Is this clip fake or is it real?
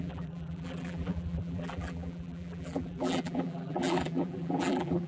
fake